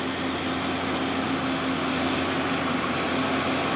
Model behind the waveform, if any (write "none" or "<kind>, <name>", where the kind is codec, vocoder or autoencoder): none